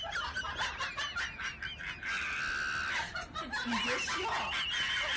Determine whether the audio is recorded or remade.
recorded